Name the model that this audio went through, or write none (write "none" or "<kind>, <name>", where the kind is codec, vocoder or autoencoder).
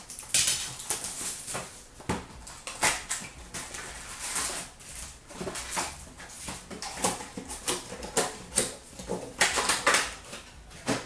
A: none